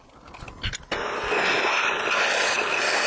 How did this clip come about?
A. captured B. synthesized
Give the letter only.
A